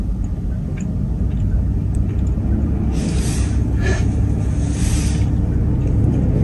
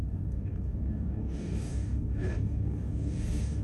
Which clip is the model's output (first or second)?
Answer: second